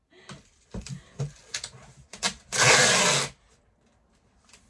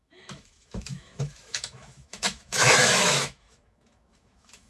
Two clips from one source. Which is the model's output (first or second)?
second